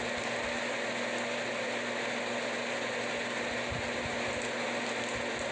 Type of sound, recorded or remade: recorded